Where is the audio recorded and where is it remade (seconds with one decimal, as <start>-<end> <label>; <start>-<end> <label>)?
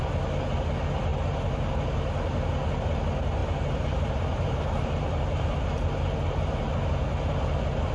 0.0-1.1 recorded; 1.1-1.8 remade; 1.8-3.4 recorded; 3.4-6.7 remade; 6.7-7.9 recorded